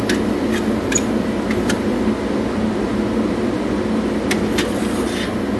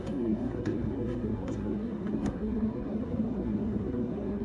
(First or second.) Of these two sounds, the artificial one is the second